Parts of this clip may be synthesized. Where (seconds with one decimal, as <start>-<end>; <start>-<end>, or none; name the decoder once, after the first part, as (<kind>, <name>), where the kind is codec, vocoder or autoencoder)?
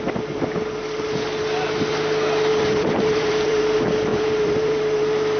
2.5-3.6 (vocoder, BigVGAN v2); 4.1-5.0